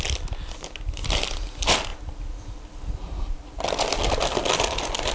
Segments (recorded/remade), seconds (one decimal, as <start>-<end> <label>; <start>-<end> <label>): 0.0-5.1 recorded